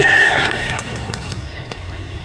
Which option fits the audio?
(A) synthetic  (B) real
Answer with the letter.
A